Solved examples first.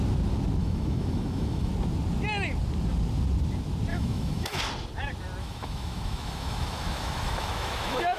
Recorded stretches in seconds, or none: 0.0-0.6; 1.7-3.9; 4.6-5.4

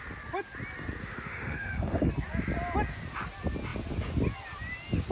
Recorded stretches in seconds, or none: 0.0-1.0; 2.1-5.1

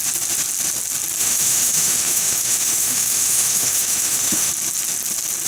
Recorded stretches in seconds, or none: 0.0-1.2; 4.5-5.5

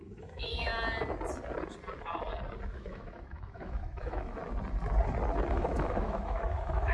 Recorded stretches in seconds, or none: 0.7-2.7; 4.4-5.5

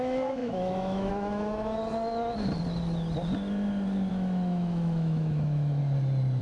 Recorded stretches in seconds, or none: 1.8-4.1; 5.8-6.4

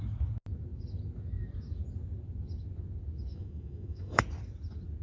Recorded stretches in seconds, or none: 0.0-3.3; 4.2-5.0

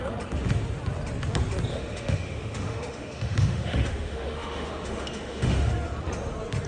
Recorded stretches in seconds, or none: 0.0-1.7; 5.7-6.7

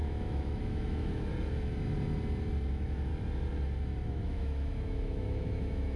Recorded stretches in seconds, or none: 1.3-2.7; 3.1-4.1